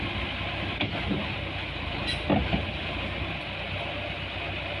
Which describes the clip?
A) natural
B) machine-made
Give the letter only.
A